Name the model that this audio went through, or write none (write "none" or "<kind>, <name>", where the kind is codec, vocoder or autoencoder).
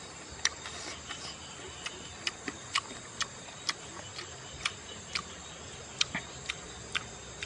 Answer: none